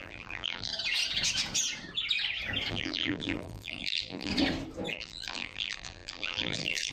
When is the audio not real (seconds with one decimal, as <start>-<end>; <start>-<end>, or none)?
0.0-0.7; 2.7-4.3; 4.9-6.9